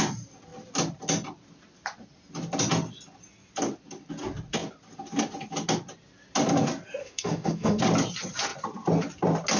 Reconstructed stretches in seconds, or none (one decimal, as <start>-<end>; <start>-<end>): 7.0-7.8